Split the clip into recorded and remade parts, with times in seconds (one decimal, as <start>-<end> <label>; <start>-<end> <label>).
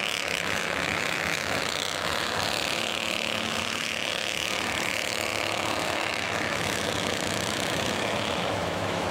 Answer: 0.0-9.1 remade